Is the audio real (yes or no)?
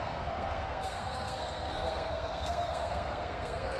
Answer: no